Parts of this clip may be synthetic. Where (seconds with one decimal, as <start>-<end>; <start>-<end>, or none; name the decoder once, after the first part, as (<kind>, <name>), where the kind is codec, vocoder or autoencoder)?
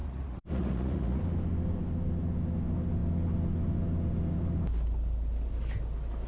0.0-1.2 (vocoder, Vocos)